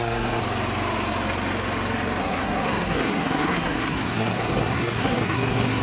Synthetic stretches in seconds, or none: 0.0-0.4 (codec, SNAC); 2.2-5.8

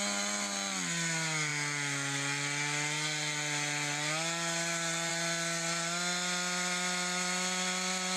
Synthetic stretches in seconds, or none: none

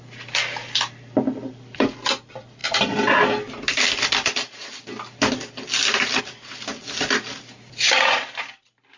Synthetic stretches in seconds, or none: 0.6-2.1 (vocoder, BigVGAN v2); 6.7-7.4